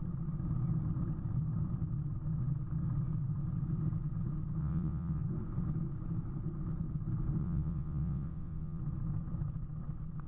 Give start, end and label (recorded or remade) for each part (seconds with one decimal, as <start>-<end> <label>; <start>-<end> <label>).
0.0-4.6 recorded; 4.6-5.2 remade; 5.2-7.4 recorded; 7.4-8.8 remade; 8.8-10.3 recorded